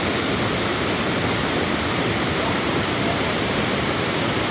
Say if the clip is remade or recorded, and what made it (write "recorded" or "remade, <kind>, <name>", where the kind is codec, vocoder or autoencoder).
recorded